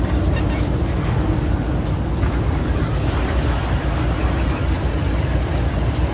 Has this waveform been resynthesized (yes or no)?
no